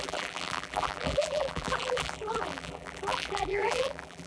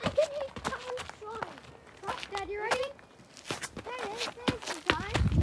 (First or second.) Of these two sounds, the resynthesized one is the first